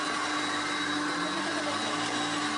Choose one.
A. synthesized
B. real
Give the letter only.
B